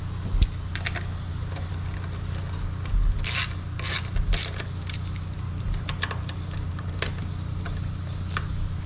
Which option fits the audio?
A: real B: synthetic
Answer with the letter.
A